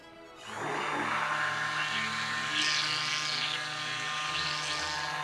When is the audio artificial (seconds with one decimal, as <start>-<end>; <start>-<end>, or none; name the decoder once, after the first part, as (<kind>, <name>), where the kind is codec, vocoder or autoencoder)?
none